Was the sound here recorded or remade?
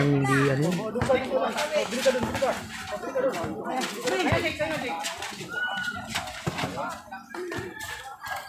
recorded